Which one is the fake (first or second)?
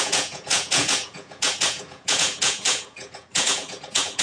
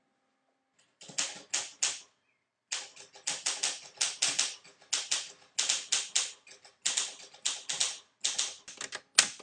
first